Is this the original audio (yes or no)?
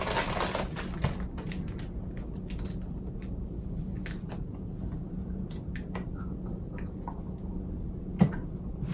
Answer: yes